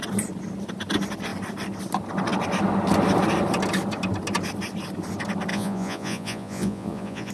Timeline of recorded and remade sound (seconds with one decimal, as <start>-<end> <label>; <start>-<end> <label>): 0.0-5.5 recorded; 5.5-7.3 remade